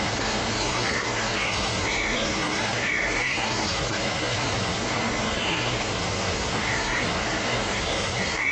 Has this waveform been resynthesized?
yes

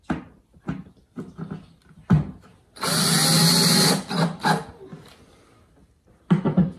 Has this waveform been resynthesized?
no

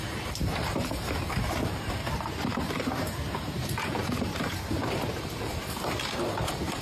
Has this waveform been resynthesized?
yes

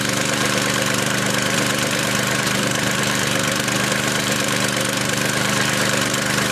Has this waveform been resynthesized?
yes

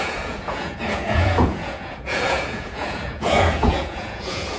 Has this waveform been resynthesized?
yes